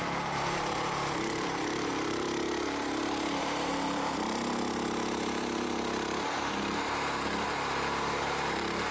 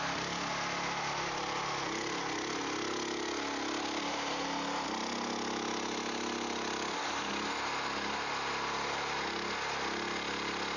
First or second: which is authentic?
second